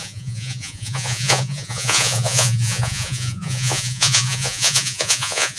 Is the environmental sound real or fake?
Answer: fake